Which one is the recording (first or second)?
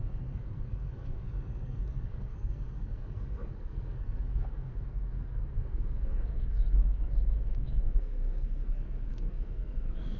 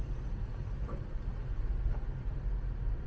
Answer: second